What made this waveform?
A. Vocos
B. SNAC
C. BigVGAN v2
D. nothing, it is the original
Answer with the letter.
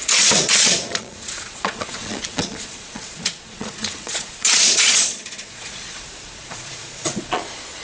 A